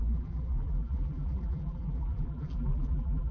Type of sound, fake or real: fake